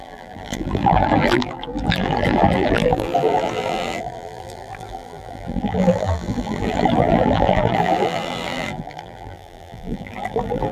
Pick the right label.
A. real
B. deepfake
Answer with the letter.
B